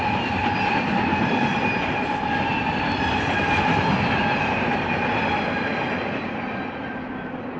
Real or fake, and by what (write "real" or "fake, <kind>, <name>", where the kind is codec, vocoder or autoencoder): real